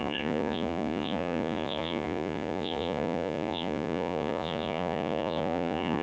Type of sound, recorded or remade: remade